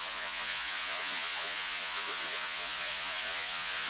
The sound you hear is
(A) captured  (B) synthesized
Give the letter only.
B